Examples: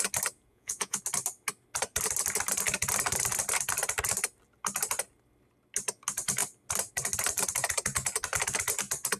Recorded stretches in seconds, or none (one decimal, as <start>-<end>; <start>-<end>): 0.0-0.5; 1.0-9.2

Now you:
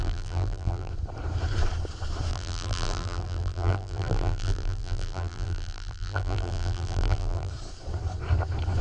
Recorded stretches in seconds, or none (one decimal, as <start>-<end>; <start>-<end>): 0.9-2.3; 7.5-8.8

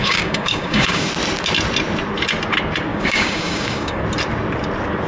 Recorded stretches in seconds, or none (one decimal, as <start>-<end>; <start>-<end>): 1.1-2.9; 4.0-5.1

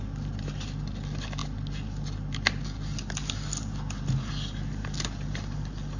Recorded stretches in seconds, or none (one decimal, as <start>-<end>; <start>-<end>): 0.0-6.0